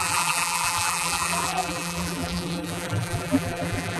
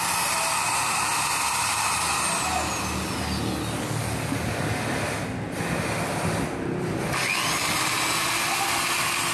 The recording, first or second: second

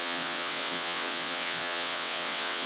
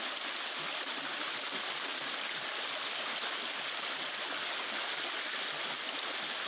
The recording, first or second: second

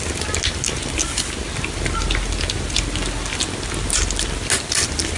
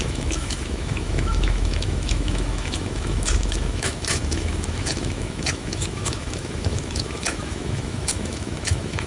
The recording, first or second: first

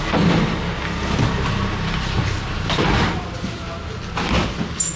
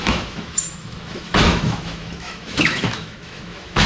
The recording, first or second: first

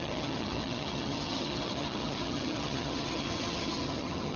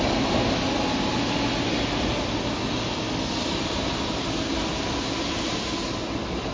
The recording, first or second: second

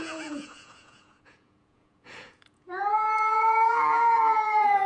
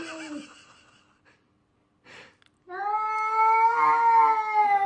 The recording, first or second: second